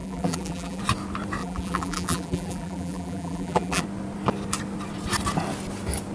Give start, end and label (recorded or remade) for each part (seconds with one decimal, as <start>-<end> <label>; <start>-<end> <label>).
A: 0.0-0.8 remade; 0.8-1.4 recorded; 1.4-3.8 remade; 3.8-6.1 recorded